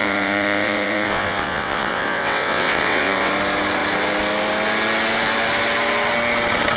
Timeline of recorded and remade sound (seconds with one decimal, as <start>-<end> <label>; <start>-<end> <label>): 0.0-3.3 remade; 3.3-6.8 recorded